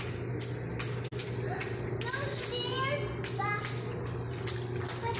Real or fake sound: real